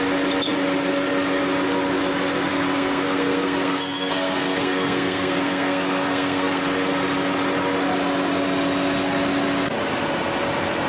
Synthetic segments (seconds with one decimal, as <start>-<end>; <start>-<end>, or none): 2.5-6.6